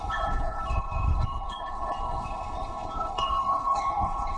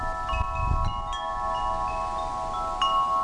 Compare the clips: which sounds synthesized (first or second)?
first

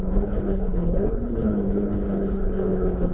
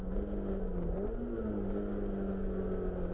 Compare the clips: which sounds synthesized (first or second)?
first